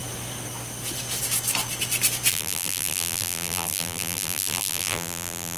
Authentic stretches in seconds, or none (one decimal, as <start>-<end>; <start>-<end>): 0.0-2.3